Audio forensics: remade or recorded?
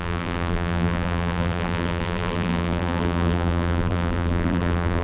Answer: remade